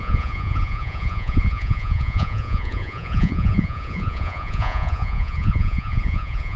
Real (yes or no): no